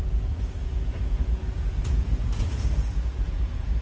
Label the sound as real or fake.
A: fake